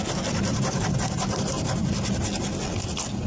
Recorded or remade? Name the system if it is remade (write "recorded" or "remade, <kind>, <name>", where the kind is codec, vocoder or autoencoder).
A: recorded